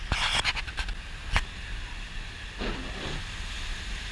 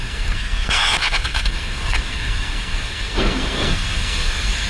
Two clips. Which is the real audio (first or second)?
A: first